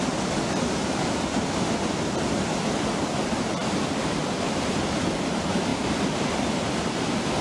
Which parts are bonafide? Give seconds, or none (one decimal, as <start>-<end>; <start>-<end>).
none